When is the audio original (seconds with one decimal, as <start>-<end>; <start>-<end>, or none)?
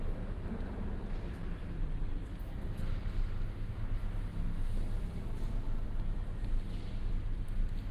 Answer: 0.0-7.9